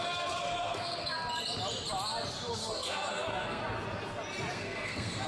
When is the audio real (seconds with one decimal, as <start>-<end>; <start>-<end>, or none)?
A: 1.2-2.5; 3.6-4.5